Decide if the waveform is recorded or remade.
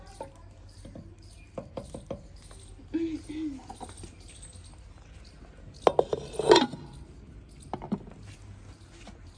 recorded